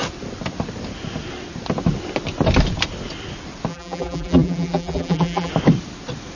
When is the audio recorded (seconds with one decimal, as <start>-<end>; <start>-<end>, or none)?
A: 0.0-3.7; 5.5-6.4